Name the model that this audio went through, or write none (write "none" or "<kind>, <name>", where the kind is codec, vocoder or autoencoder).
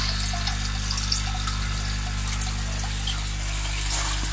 none